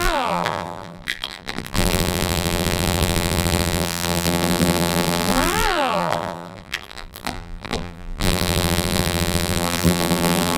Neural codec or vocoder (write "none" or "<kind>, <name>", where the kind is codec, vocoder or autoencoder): vocoder, BigVGAN v2